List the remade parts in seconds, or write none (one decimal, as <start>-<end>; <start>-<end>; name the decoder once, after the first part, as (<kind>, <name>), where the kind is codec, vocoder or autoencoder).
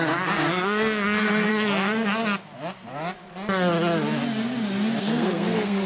0.0-1.5 (codec, SNAC); 5.0-5.9